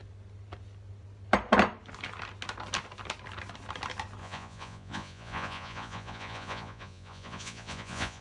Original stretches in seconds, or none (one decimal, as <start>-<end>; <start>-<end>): 0.0-4.2